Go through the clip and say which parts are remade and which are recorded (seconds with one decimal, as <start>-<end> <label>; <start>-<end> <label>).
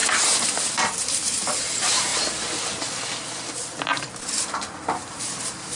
0.0-5.8 recorded